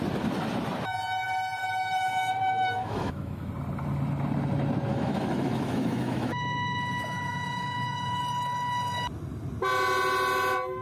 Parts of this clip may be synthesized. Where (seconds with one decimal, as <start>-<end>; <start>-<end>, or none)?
1.6-3.5; 4.9-8.2